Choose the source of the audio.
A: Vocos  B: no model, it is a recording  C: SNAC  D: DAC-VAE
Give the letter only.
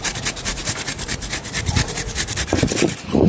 A